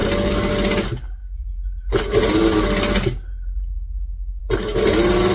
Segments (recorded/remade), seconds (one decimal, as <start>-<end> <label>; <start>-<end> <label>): 0.0-5.3 recorded